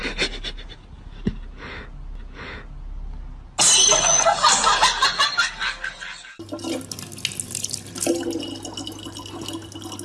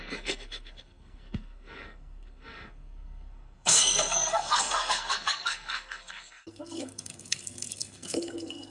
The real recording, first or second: first